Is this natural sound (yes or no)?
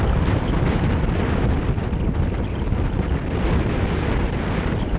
yes